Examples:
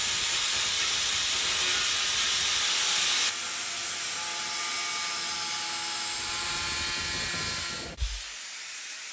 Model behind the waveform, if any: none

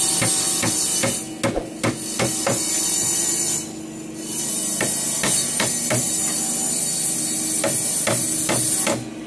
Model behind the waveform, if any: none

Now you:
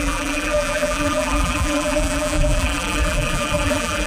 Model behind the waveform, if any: vocoder, BigVGAN v2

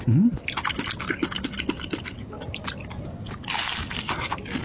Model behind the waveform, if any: none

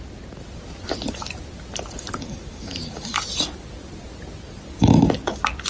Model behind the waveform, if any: none